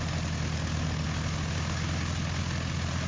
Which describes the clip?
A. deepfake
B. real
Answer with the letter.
B